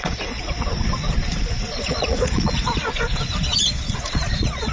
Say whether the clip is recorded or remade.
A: remade